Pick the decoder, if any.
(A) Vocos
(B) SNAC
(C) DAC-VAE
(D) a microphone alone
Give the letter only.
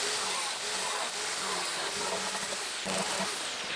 D